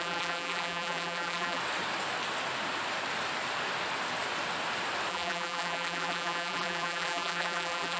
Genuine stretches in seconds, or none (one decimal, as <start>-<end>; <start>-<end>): 1.6-5.1